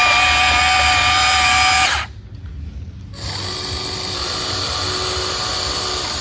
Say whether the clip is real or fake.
real